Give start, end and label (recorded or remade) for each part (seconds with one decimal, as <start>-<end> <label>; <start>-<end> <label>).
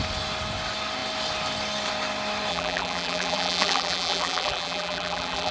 0.0-2.5 recorded; 2.5-5.5 remade